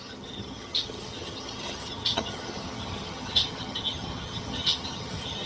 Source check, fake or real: fake